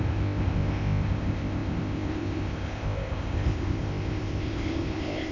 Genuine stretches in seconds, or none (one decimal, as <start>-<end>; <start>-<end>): none